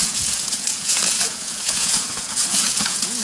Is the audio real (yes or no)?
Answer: no